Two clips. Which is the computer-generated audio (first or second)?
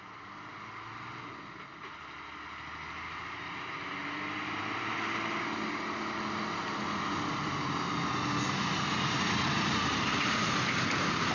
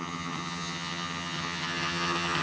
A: second